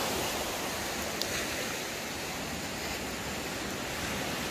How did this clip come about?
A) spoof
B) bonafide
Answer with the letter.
B